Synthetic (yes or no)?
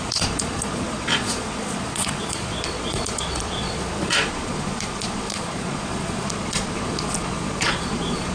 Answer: yes